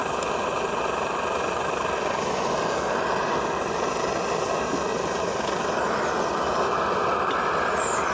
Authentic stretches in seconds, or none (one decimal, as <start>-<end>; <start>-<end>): 0.0-8.1